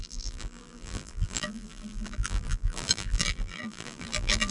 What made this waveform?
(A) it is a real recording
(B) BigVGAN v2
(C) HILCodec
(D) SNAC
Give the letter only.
B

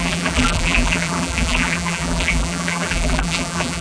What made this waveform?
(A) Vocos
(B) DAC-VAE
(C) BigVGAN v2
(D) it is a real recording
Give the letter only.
C